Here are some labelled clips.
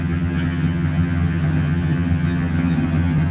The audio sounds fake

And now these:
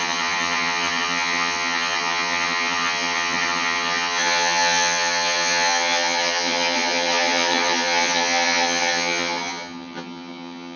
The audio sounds fake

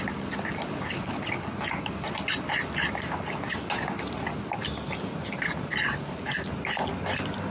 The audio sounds real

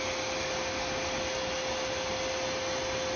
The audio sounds real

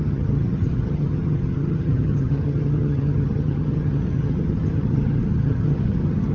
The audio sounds fake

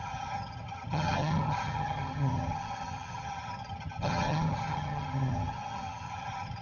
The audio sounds fake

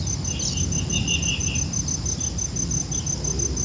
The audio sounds real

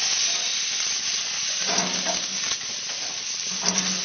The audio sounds real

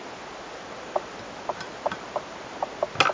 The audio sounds real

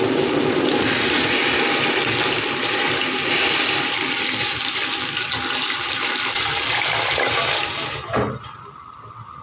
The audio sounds real